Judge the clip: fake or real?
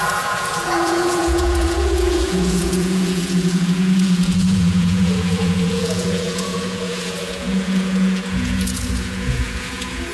fake